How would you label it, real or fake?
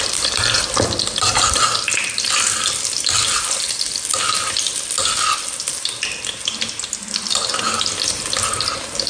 real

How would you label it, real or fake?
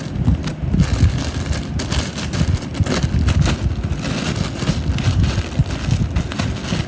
real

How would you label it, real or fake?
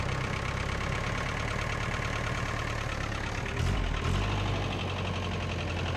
real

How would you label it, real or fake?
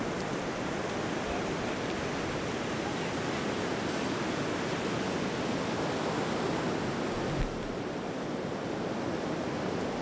real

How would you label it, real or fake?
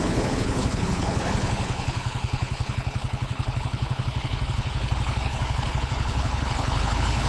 fake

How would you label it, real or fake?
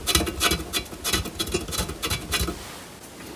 real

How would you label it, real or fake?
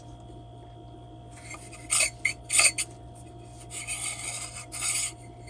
real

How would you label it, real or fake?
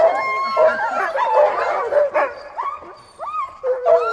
real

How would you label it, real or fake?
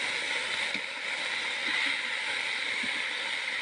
real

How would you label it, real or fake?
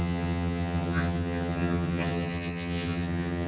fake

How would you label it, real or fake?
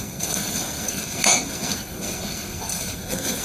fake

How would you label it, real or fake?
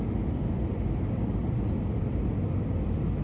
real